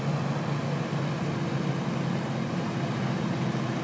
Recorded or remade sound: recorded